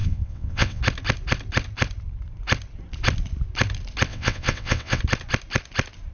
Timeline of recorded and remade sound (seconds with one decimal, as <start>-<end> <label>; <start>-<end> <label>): 0.0-0.8 remade; 0.8-4.1 recorded; 4.1-5.0 remade; 5.0-6.1 recorded